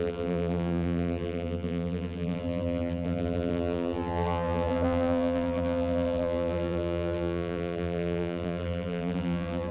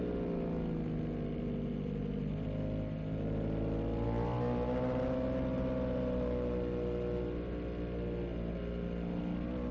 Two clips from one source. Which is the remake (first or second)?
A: first